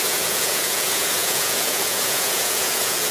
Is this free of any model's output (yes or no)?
no